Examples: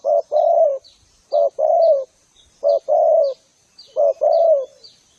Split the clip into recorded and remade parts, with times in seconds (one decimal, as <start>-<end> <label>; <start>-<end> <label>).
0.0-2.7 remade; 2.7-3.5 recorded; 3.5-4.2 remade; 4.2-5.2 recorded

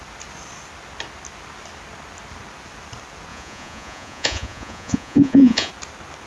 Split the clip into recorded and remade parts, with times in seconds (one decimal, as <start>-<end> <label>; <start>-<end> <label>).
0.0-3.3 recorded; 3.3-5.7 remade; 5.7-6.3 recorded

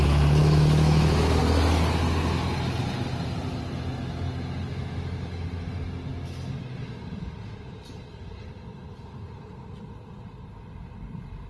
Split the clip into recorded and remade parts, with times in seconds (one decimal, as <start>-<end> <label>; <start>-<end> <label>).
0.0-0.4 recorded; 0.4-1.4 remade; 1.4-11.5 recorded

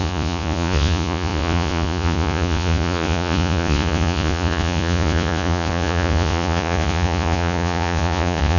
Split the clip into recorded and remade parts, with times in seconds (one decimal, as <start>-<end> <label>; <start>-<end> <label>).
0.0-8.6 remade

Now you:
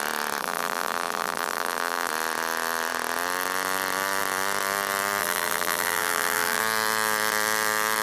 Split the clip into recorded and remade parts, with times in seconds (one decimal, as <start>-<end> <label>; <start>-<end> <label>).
0.0-0.4 recorded; 0.4-2.1 remade; 2.1-5.2 recorded; 5.2-6.6 remade; 6.6-8.0 recorded

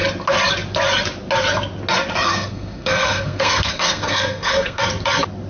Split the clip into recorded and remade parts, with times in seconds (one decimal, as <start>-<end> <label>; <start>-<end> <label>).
0.0-2.3 recorded; 2.3-4.8 remade; 4.8-5.5 recorded